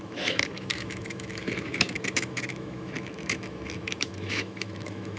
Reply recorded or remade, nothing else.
remade